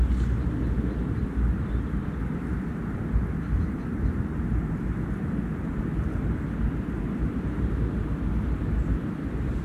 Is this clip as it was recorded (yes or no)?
yes